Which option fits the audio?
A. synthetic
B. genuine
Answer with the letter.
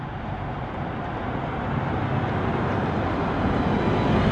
B